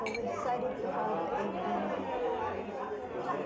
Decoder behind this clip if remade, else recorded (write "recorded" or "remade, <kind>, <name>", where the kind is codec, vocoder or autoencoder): recorded